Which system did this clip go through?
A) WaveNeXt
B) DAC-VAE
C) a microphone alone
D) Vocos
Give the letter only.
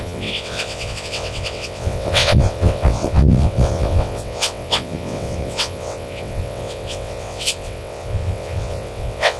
A